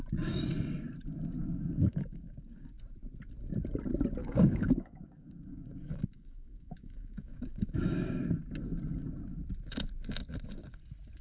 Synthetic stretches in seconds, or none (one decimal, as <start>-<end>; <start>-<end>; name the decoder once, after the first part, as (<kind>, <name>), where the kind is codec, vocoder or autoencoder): 1.9-2.7 (codec, DAC); 4.2-8.2